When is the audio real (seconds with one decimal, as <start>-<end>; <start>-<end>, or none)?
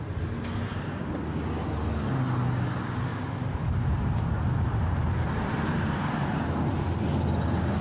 0.0-3.1; 6.8-7.8